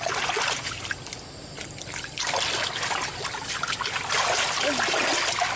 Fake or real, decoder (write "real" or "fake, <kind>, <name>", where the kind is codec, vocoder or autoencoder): real